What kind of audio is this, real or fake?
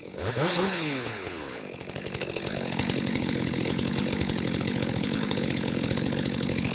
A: fake